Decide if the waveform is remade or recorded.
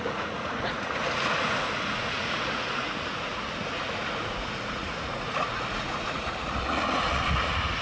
remade